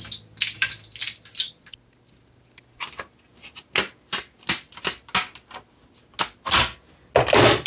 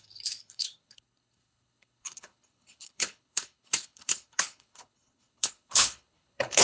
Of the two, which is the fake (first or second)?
second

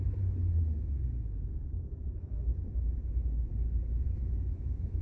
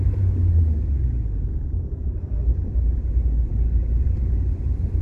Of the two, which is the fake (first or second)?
first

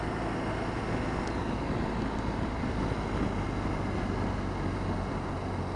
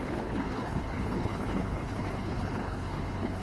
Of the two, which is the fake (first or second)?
second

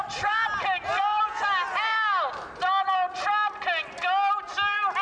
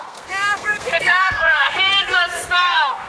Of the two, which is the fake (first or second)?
second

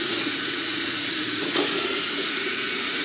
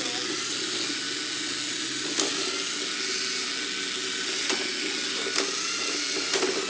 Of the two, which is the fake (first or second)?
first